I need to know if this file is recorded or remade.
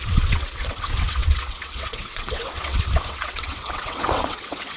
remade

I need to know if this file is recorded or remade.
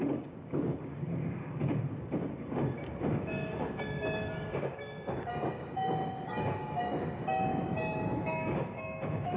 remade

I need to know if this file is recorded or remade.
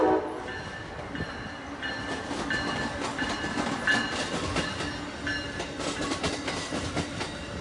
recorded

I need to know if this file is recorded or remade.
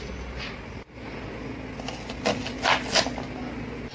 recorded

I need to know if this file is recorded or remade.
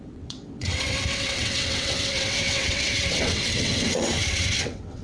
remade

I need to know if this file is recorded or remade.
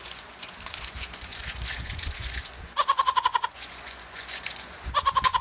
remade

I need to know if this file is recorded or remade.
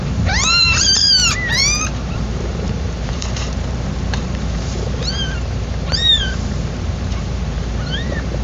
remade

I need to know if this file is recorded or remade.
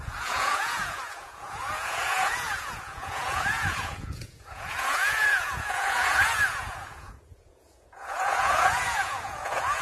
remade